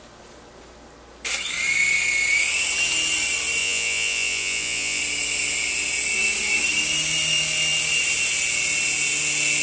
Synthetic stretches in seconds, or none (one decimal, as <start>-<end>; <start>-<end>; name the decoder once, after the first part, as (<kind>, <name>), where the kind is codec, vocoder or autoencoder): 3.6-5.0 (vocoder, Vocos)